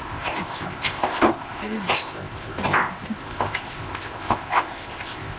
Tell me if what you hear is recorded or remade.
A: remade